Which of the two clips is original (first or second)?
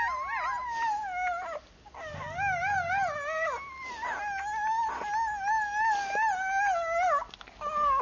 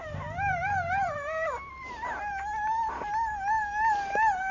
first